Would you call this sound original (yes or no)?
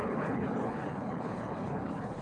no